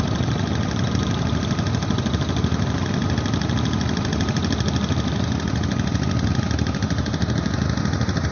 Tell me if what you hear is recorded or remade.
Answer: recorded